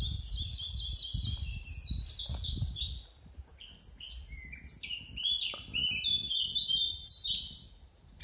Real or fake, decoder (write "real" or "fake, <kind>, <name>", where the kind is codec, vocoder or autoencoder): real